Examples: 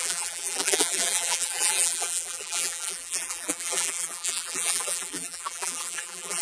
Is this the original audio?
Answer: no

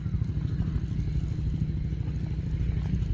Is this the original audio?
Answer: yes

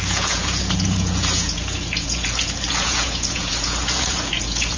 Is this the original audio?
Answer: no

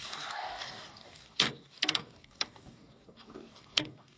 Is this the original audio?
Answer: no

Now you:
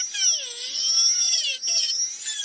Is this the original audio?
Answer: yes